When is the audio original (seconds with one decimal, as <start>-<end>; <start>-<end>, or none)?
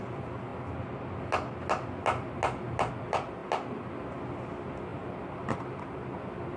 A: 0.0-6.6